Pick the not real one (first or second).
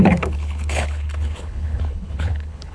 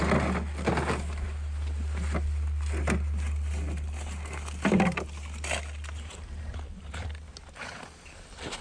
first